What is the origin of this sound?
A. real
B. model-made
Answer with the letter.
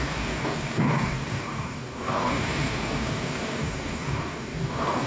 B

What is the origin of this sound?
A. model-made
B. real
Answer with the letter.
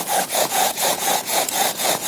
A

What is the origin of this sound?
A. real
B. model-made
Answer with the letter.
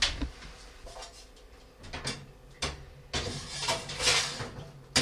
A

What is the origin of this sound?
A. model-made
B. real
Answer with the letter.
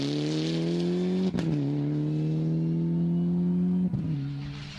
B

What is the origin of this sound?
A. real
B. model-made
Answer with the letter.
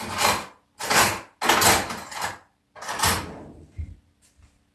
A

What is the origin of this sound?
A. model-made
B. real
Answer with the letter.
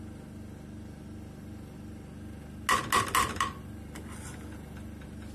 B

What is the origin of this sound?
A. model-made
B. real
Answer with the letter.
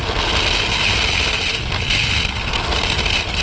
B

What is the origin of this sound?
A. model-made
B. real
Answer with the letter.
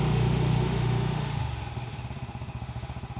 A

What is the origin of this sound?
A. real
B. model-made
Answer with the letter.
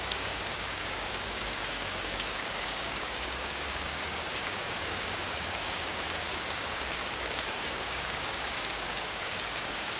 B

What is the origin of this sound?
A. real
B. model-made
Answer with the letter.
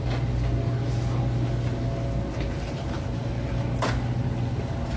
A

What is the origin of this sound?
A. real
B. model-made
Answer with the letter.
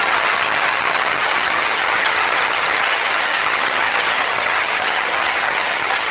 B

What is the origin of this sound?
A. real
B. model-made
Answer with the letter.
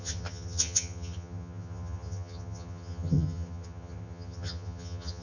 B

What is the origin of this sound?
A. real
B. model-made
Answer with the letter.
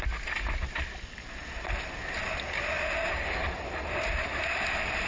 A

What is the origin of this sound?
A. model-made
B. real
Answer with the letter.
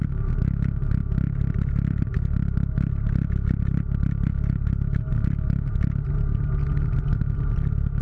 B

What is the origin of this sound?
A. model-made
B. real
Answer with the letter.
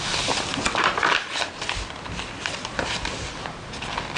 B